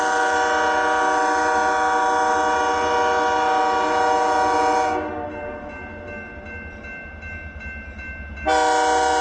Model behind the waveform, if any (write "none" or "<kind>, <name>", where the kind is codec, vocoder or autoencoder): none